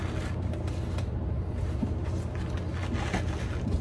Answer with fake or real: real